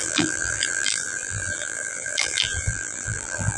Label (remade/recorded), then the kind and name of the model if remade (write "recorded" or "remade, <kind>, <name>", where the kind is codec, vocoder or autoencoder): remade, vocoder, BigVGAN v2